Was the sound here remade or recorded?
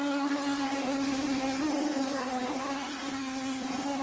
remade